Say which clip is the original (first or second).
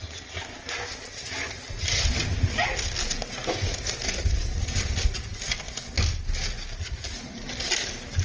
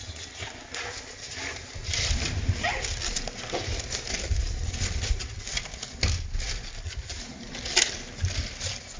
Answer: first